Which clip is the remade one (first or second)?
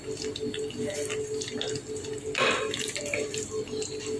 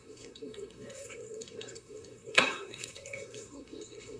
second